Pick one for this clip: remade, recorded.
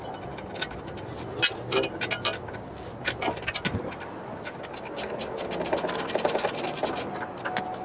recorded